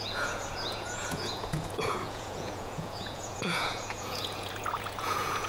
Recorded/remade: remade